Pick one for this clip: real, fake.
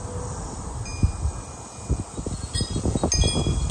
real